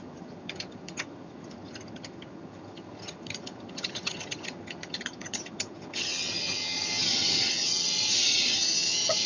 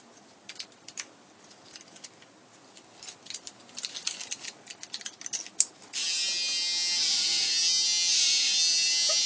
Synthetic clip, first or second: first